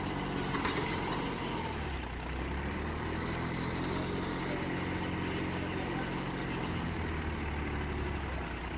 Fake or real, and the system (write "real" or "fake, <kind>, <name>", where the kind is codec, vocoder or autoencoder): real